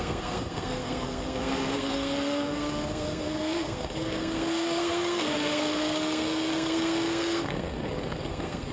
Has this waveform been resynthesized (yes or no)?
yes